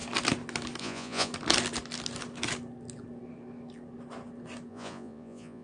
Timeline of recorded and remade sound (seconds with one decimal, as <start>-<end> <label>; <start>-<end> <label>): 0.0-0.8 recorded; 0.8-1.3 remade; 1.3-4.7 recorded; 4.7-5.6 remade